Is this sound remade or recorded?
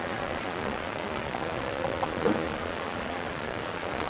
remade